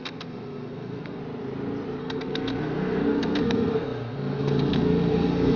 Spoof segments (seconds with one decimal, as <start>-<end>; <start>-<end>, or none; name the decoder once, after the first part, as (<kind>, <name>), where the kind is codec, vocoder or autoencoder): 0.0-1.2 (codec, SNAC); 2.0-5.6